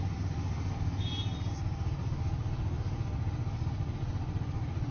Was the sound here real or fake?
real